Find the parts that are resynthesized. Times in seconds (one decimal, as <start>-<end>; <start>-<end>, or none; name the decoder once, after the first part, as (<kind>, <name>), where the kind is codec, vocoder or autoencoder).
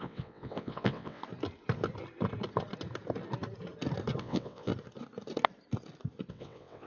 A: 0.0-1.2 (vocoder, WaveNeXt); 4.2-4.7; 6.3-6.9